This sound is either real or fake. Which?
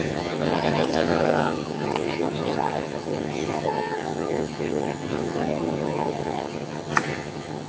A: fake